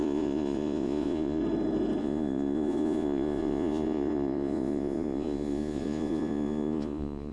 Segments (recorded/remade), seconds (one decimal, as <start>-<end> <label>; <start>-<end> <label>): 0.0-1.4 remade; 1.4-2.0 recorded; 2.0-7.3 remade